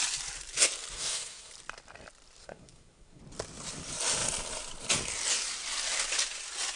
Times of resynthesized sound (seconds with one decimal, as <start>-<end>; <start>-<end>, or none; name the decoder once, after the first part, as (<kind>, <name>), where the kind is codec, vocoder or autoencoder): 0.9-1.5 (codec, SNAC); 2.4-3.2